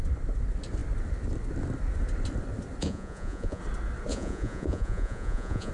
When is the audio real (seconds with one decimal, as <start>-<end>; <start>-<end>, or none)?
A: 0.0-2.8; 3.6-4.1